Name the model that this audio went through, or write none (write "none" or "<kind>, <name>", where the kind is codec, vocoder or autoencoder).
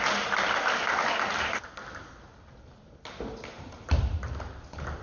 none